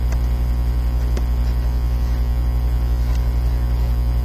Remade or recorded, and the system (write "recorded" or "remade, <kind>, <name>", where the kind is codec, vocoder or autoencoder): recorded